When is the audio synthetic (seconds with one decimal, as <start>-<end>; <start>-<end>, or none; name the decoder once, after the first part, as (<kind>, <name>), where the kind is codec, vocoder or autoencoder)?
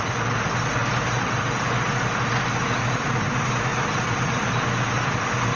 none